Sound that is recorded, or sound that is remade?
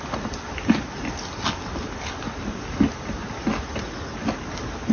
recorded